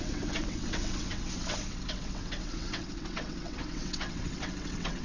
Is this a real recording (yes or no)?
no